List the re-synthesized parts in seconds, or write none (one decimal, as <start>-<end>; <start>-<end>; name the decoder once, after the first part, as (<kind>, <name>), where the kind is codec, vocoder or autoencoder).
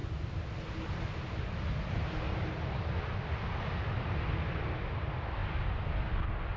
none